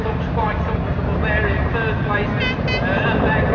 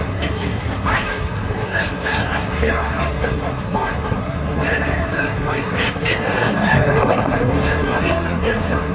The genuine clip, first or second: first